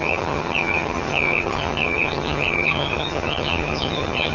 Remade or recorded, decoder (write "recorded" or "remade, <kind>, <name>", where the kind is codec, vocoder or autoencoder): remade, vocoder, HiFi-GAN